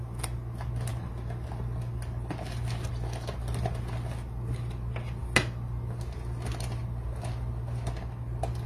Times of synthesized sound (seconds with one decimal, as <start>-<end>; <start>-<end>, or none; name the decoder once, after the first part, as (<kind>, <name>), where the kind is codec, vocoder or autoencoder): none